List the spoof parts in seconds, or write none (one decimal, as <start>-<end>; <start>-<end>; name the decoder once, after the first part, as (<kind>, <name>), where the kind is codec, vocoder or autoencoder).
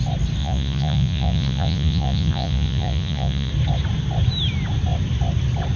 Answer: 0.4-3.5 (vocoder, Vocos)